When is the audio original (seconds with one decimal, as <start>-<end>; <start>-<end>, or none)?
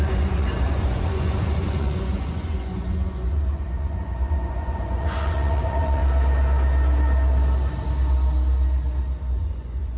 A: 6.0-9.3